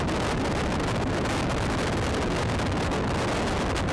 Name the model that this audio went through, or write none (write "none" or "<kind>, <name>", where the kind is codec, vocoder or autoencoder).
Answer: none